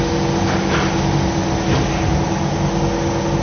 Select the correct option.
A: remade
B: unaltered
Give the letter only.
B